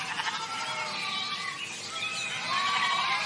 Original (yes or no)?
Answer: yes